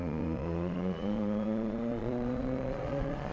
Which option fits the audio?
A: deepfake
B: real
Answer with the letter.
A